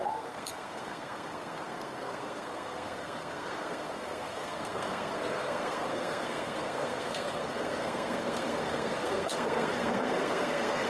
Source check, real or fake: fake